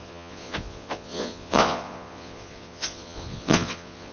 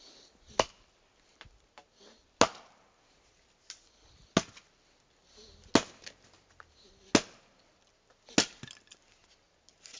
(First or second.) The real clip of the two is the second